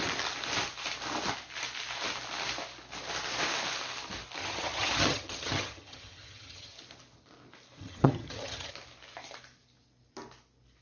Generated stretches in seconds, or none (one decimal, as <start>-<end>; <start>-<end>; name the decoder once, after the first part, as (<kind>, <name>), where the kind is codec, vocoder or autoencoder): 4.4-6.7 (vocoder, HiFi-GAN); 7.8-8.7